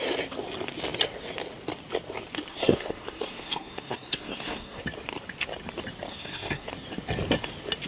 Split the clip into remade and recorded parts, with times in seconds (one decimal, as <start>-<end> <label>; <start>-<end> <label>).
0.0-2.5 recorded; 2.5-4.8 remade; 4.8-6.1 recorded; 6.1-6.7 remade; 6.7-7.9 recorded